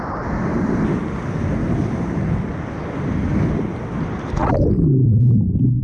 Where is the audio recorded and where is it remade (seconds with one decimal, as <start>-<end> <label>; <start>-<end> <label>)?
0.0-5.0 recorded; 5.0-5.8 remade